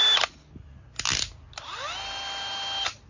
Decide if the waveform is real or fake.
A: real